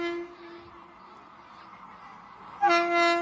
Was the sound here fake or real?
real